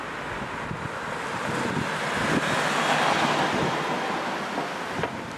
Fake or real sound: real